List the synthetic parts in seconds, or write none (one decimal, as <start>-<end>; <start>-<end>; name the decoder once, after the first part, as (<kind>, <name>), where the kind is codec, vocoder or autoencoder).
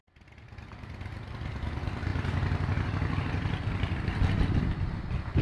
1.3-5.4 (vocoder, BigVGAN v2)